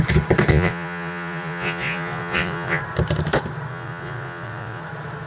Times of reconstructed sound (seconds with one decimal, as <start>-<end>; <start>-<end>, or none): 0.5-2.8; 3.7-4.8

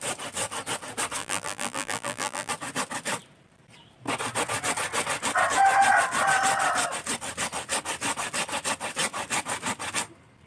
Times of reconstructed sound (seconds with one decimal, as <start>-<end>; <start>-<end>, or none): 1.2-2.5